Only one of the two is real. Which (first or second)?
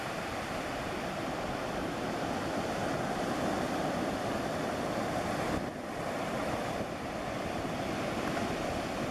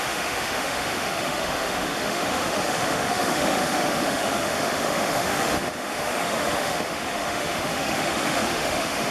first